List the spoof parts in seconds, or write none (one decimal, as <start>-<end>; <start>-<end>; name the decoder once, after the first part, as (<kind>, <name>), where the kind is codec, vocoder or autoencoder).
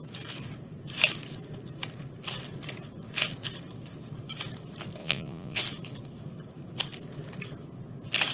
5.0-5.6 (vocoder, Vocos)